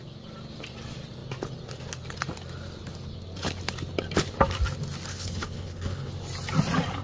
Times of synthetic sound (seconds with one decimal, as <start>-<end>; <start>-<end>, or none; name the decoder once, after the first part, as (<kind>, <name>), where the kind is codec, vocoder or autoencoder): 5.1-6.1 (codec, HILCodec)